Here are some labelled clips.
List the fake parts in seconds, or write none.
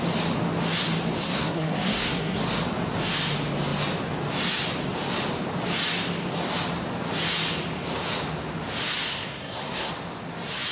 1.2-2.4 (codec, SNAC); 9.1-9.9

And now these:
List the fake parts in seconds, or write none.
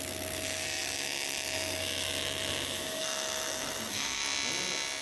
0.0-4.2 (autoencoder, DAC-VAE)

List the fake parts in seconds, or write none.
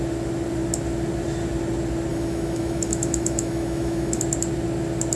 2.1-4.2 (autoencoder, DAC-VAE)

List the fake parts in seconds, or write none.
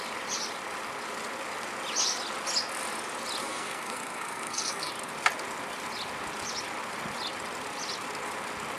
3.4-4.9 (codec, SNAC)